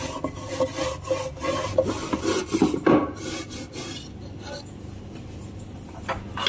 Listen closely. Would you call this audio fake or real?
real